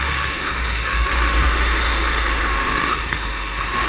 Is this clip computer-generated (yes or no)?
yes